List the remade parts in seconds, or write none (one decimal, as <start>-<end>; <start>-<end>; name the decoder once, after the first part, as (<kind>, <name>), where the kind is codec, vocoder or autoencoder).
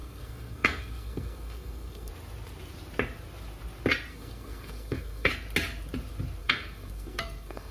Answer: 0.0-2.1 (codec, SNAC); 4.1-5.3; 6.4-7.7